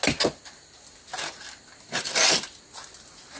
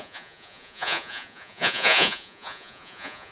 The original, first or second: first